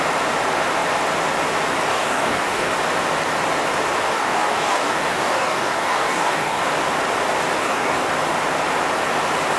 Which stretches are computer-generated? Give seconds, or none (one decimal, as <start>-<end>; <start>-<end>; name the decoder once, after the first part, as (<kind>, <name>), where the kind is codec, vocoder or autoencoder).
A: 1.9-2.7 (codec, DAC); 4.1-6.7; 7.6-8.1